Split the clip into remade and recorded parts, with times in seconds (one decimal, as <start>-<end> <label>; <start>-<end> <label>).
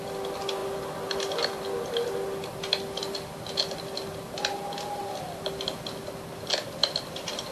0.0-7.5 recorded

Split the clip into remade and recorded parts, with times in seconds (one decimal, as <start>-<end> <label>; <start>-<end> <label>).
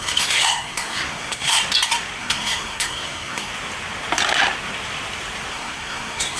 0.0-1.6 remade; 1.6-2.2 recorded; 2.2-3.5 remade; 3.5-5.5 recorded; 5.5-6.4 remade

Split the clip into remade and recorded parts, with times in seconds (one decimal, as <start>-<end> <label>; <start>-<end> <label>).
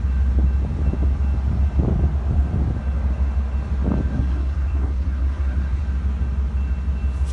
0.0-4.1 recorded; 4.1-5.8 remade; 5.8-7.3 recorded